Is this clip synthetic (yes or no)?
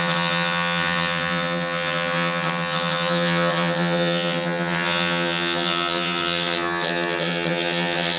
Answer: yes